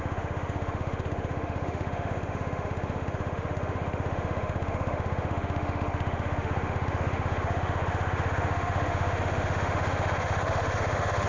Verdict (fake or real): fake